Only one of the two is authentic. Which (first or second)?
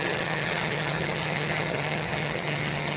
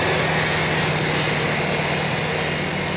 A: second